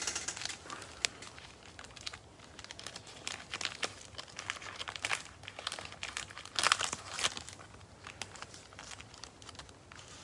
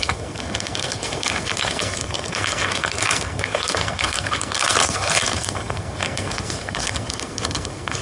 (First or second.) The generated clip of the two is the second